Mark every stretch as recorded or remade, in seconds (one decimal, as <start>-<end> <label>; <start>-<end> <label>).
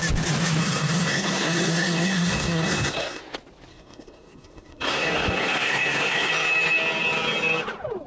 0.0-0.6 recorded; 0.6-3.2 remade; 3.2-3.7 recorded; 3.7-6.3 remade; 6.3-8.1 recorded